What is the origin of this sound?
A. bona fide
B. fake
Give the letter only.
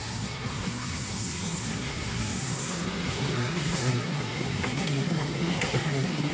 B